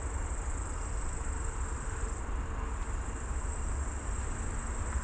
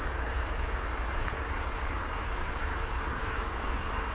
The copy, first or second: second